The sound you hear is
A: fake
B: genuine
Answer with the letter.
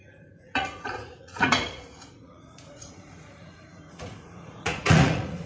A